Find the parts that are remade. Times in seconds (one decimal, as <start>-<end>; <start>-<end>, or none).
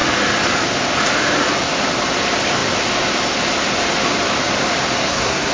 5.0-5.5